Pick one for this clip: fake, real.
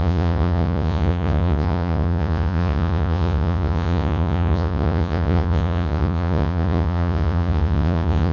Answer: fake